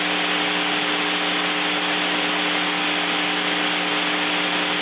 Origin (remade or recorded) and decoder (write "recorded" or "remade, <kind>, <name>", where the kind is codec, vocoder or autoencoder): recorded